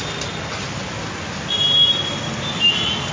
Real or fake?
real